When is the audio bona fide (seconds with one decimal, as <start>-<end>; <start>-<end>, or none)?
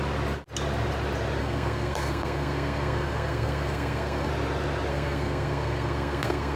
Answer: 0.0-1.4; 4.3-4.9